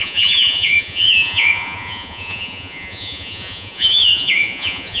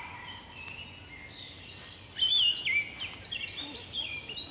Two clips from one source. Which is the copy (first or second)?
first